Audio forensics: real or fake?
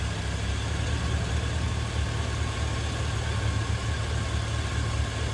real